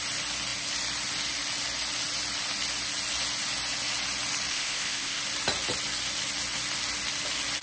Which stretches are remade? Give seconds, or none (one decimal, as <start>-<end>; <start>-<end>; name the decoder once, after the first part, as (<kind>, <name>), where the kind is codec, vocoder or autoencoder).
4.5-5.2 (codec, ZipCodec)